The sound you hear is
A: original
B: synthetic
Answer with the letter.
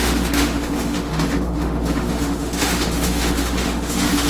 B